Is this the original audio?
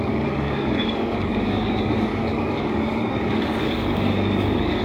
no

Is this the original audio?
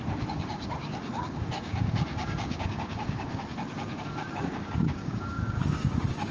no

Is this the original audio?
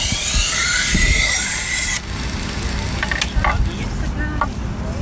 yes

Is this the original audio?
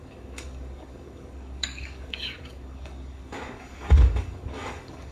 no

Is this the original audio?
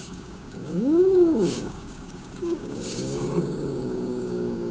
no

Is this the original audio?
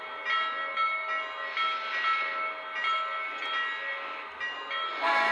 yes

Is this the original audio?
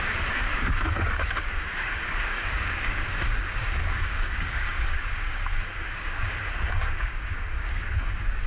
no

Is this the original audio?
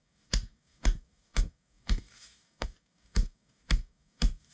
no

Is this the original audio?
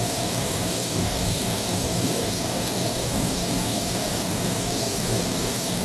no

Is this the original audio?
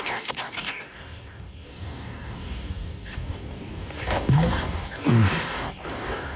no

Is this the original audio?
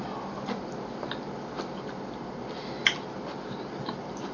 yes